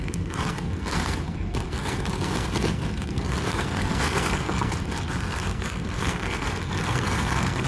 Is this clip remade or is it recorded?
remade